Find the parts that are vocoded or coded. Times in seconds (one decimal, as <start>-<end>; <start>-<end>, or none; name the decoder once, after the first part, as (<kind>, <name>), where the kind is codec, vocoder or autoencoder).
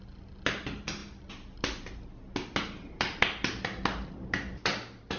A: none